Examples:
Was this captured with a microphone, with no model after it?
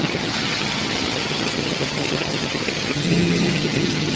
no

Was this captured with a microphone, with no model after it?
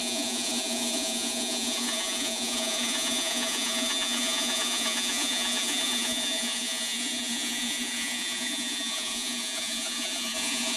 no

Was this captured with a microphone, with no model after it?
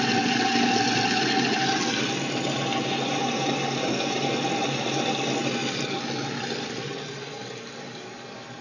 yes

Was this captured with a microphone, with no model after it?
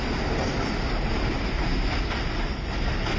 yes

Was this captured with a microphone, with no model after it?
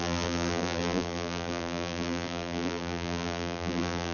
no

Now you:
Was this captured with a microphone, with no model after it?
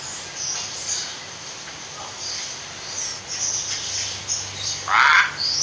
yes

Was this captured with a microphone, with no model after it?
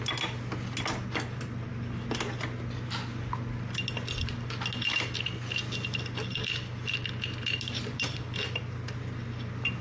yes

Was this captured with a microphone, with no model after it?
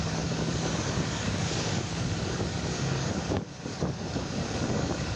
no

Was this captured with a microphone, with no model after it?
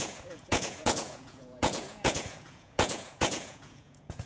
no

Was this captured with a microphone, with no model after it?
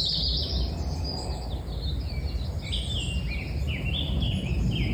yes